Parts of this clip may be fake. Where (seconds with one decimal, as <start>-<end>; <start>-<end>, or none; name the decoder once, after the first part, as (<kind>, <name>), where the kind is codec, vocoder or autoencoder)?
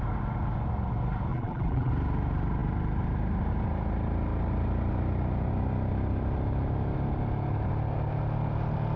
1.3-1.9 (vocoder, BigVGAN v2)